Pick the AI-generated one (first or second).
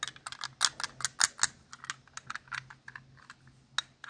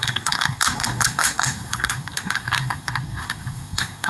second